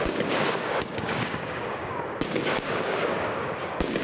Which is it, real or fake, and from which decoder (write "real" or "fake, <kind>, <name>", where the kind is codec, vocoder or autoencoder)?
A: fake, codec, DAC